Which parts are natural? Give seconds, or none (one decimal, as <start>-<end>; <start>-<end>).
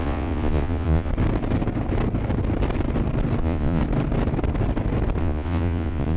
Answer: 1.1-3.4; 3.8-5.2